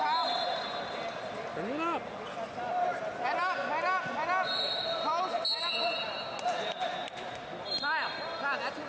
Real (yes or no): yes